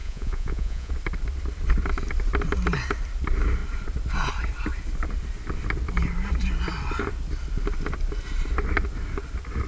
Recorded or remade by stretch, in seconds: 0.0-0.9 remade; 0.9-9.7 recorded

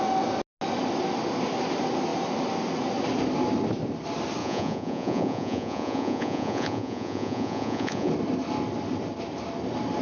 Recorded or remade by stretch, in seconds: 0.0-4.4 recorded; 4.4-8.1 remade; 8.1-10.0 recorded

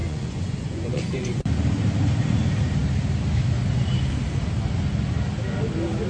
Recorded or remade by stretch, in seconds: 0.0-1.5 remade; 1.5-6.1 recorded

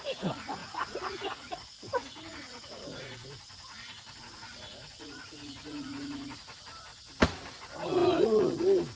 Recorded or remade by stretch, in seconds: 0.0-6.9 remade; 6.9-7.6 recorded; 7.6-9.0 remade

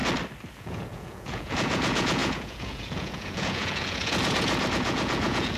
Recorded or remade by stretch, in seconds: 0.0-0.5 recorded; 0.5-5.6 remade

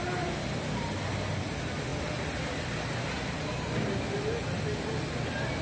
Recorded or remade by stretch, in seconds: 0.0-5.6 recorded

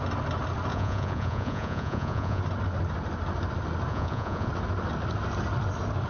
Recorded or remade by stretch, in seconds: 0.0-0.7 recorded; 0.7-2.4 remade; 2.4-3.9 recorded; 3.9-4.5 remade; 4.5-6.1 recorded